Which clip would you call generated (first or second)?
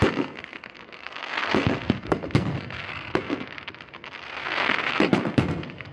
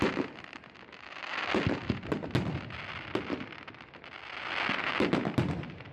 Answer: first